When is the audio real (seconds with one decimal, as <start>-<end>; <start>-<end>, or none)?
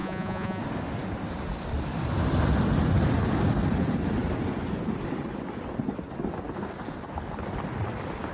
0.6-8.3